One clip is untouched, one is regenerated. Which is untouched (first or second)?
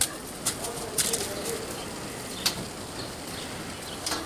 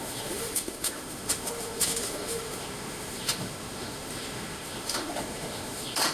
first